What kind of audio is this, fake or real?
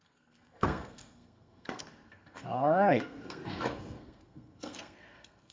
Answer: fake